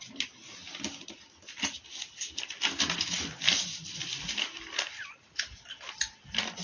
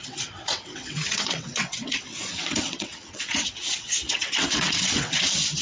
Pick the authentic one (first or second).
first